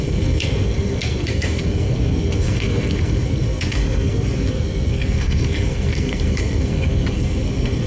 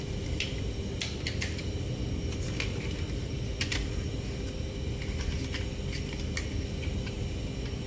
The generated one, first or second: first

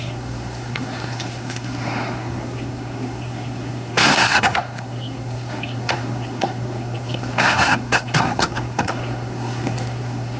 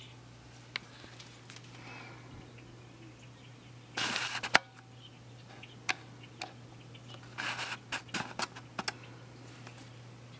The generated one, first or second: first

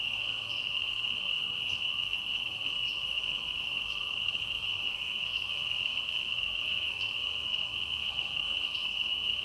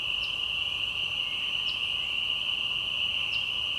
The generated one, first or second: first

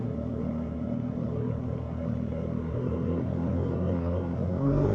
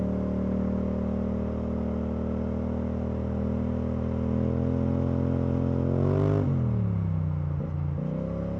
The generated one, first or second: first